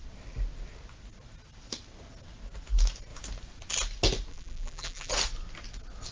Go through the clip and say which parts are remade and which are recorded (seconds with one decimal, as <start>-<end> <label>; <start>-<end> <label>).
0.0-4.3 recorded; 4.3-5.1 remade; 5.1-6.1 recorded